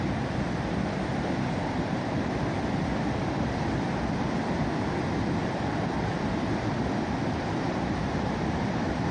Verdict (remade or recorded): remade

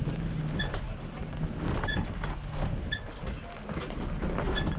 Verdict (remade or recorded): recorded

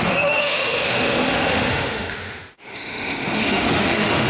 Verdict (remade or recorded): remade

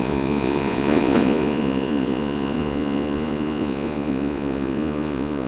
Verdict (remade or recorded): remade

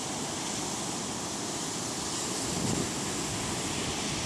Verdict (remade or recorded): recorded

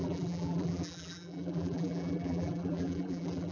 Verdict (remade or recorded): remade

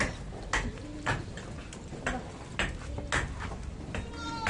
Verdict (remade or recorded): recorded